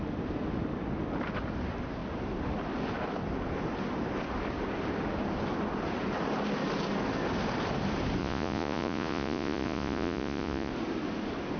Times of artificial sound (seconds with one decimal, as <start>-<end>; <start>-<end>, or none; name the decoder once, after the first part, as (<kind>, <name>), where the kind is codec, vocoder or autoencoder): 8.2-10.7 (vocoder, Vocos)